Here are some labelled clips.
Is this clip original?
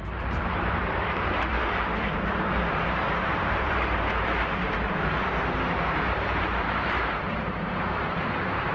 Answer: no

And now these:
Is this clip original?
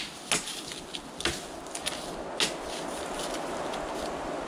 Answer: yes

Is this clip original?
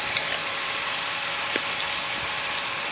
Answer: yes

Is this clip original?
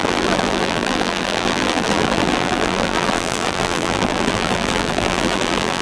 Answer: no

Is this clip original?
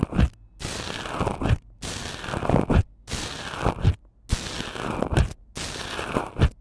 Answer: yes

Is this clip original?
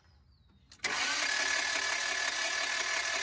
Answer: yes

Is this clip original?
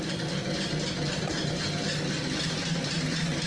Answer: yes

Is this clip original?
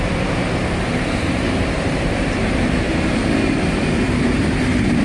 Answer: no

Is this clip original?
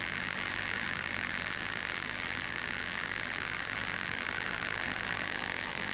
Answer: no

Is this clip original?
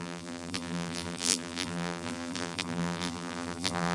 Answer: no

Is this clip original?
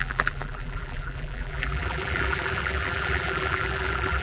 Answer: no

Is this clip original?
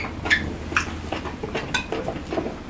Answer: yes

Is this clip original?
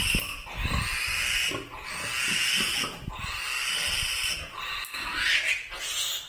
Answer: yes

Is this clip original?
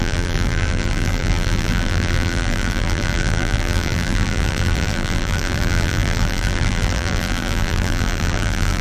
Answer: no